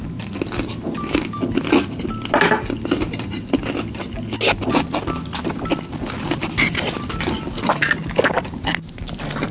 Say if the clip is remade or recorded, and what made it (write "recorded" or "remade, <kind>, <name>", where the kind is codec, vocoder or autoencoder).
recorded